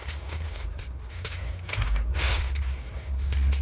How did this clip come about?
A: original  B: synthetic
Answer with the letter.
B